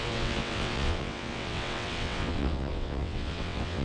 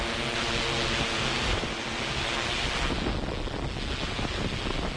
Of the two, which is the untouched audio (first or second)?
second